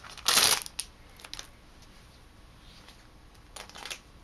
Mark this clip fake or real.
real